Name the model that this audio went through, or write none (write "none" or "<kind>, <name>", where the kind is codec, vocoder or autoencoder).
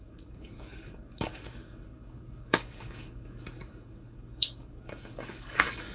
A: codec, DAC